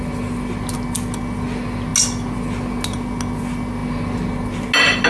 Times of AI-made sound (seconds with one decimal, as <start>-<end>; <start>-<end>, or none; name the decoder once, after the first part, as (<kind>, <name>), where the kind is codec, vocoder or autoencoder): none

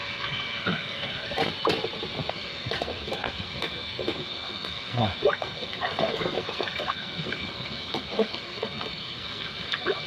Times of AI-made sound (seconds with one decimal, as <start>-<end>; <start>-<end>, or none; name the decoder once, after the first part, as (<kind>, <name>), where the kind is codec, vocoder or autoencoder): 0.0-1.4 (codec, SNAC); 2.3-10.1